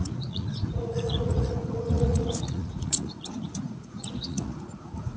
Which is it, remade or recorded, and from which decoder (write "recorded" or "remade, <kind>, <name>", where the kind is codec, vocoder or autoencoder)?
remade, vocoder, Vocos